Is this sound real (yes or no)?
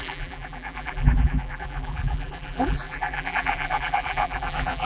no